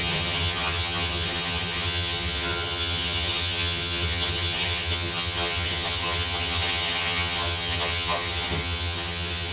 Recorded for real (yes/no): no